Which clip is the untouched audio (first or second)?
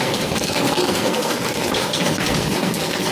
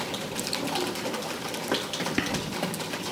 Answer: second